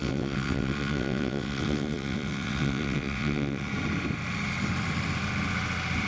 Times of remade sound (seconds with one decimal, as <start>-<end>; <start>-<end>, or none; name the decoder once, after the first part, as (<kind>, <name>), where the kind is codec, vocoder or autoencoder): 0.0-3.7 (vocoder, WaveNeXt)